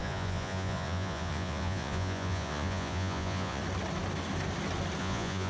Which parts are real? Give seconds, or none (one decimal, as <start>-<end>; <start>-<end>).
3.6-5.0

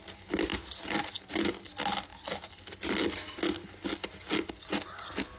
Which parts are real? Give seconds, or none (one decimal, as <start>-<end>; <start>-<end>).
0.0-5.4

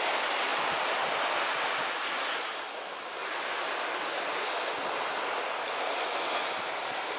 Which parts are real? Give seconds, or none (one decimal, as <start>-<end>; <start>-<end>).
0.0-7.2

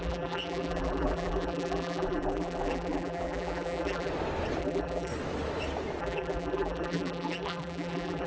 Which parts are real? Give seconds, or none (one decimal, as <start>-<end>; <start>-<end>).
4.1-4.6; 5.1-6.0

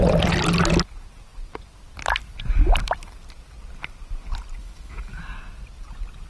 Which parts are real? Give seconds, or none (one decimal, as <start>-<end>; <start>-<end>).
0.0-4.6; 5.2-6.3